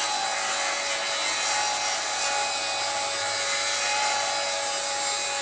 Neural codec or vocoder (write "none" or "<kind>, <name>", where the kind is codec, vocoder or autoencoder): none